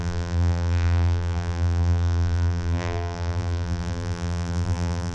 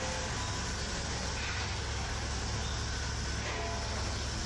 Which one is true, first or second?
second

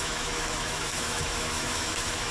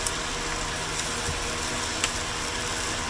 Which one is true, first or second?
second